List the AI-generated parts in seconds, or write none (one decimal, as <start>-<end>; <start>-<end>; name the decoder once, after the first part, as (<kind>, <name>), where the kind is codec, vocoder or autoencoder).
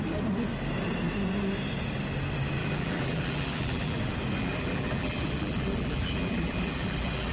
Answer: 2.6-4.0 (vocoder, BigVGAN v2); 4.4-7.3